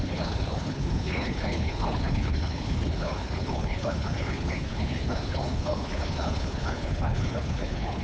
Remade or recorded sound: remade